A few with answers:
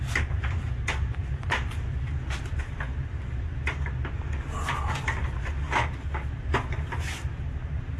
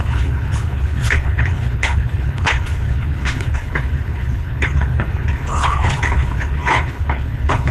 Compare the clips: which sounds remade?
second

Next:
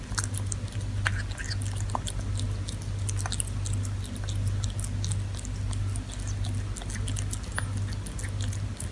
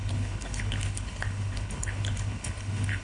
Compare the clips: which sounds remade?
second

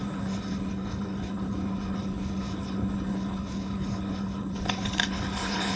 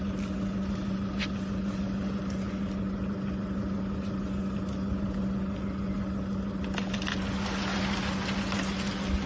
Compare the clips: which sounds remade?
first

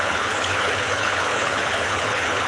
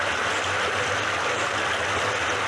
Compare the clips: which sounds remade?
first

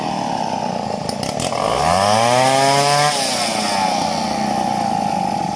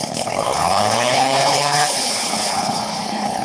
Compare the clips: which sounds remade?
second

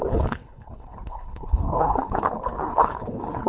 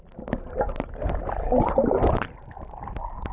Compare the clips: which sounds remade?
first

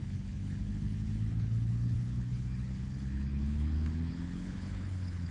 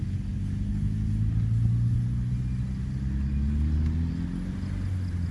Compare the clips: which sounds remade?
first